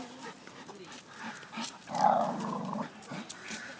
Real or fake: fake